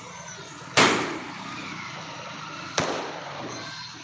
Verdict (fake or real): real